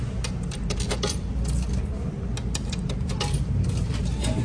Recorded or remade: recorded